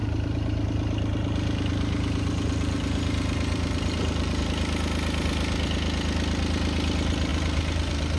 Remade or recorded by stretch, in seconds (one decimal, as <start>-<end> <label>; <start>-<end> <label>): 0.0-4.4 remade; 4.4-7.3 recorded; 7.3-8.2 remade